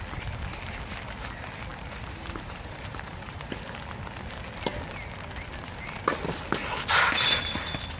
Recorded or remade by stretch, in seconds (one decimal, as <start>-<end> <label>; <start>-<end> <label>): 0.0-1.7 recorded; 1.7-3.8 remade; 3.8-8.0 recorded